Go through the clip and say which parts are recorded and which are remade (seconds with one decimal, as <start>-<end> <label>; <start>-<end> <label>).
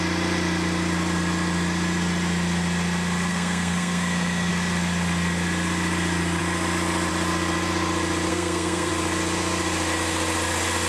0.0-3.3 recorded; 3.3-4.5 remade; 4.5-8.3 recorded; 8.3-8.9 remade; 8.9-10.9 recorded